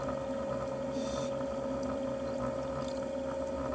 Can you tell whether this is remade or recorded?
recorded